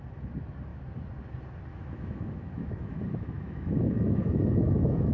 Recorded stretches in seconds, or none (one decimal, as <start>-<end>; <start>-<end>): 0.0-1.7